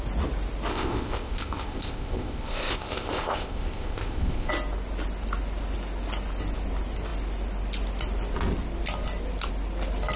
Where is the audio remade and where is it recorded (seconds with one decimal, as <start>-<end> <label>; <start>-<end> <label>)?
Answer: 0.0-0.7 recorded; 0.7-4.5 remade; 4.5-10.2 recorded